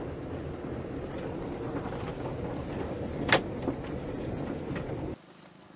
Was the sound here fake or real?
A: real